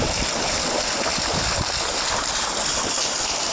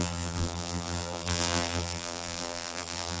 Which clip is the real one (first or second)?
first